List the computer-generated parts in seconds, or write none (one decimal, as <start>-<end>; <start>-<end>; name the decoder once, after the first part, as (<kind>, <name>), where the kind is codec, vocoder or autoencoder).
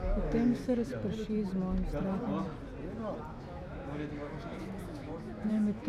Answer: 0.0-0.9 (autoencoder, DAC-VAE); 3.3-5.9